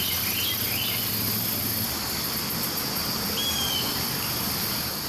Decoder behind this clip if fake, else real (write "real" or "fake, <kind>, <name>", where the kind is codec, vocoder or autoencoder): real